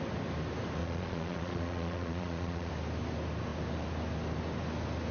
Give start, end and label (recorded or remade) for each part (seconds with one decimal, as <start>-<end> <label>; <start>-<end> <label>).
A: 0.0-0.8 recorded; 0.8-2.7 remade; 2.7-5.1 recorded